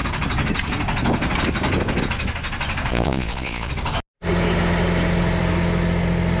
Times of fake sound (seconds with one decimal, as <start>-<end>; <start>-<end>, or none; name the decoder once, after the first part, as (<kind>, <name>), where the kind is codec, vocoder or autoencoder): 2.9-3.7 (vocoder, Vocos)